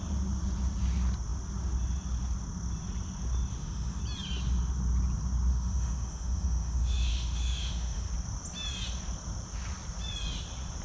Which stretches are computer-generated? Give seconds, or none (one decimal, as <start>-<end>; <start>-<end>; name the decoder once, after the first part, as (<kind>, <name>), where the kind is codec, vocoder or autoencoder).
3.5-4.0 (autoencoder, DAC-VAE); 5.5-8.1